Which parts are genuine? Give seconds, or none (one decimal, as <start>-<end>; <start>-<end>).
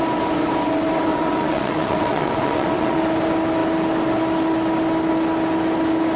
0.0-1.1; 3.0-6.2